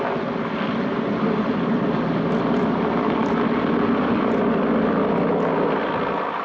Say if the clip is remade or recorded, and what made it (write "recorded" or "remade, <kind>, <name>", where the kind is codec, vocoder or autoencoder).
recorded